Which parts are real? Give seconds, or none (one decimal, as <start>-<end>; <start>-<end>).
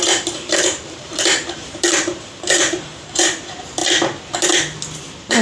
3.8-5.0